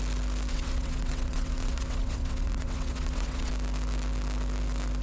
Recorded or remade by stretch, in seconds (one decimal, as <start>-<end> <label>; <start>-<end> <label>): 0.0-0.5 recorded; 0.5-3.5 remade; 3.5-5.0 recorded